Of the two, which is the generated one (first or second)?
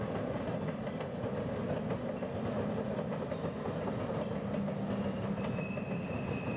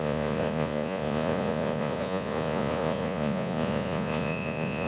second